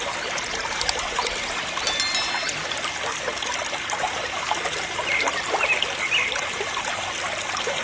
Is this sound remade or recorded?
recorded